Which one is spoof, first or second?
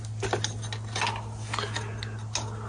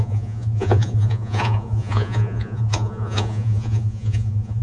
second